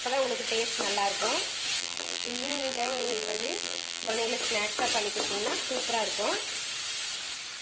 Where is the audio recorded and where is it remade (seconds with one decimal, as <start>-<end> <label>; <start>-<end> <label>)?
0.0-1.8 recorded; 1.8-4.1 remade; 4.1-7.6 recorded